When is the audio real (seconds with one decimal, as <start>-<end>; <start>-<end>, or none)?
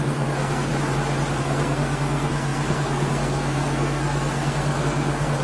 0.7-1.4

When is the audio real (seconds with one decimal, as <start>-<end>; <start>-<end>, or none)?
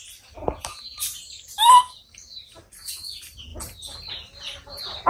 0.0-0.9; 2.2-5.1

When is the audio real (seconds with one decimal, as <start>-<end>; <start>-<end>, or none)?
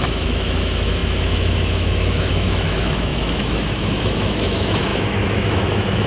none